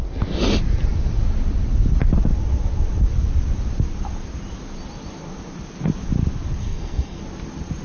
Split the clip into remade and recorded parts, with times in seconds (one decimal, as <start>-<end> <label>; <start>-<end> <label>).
0.0-6.6 recorded; 6.6-7.2 remade; 7.2-7.8 recorded